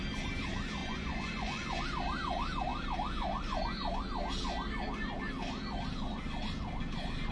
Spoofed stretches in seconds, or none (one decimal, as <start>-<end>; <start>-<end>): 0.8-1.8